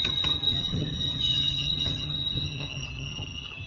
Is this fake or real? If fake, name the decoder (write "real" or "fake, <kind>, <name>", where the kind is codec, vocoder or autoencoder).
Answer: fake, vocoder, HiFi-GAN